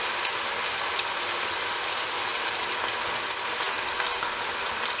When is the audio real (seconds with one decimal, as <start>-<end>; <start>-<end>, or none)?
0.0-5.0